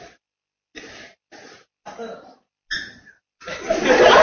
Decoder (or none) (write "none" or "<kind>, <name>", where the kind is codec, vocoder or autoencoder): none